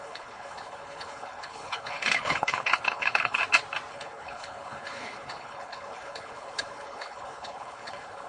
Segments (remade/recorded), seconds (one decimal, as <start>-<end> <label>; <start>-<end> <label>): 0.0-3.4 remade; 3.4-3.9 recorded; 3.9-8.3 remade